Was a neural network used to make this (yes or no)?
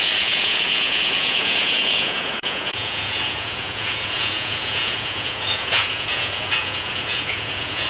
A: yes